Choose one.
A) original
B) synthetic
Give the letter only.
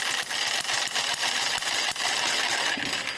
B